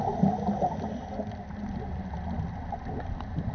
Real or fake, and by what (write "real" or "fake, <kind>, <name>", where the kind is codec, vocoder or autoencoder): real